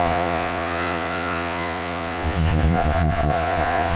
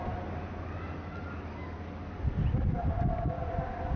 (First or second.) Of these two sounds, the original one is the second